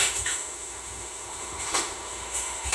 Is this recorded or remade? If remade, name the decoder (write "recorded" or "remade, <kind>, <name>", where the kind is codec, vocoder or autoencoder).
remade, autoencoder, DAC-VAE